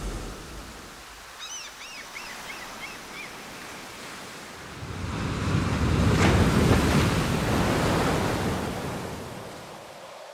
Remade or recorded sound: recorded